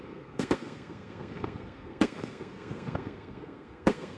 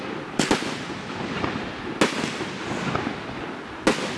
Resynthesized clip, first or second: first